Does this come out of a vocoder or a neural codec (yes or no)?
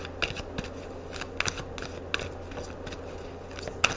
no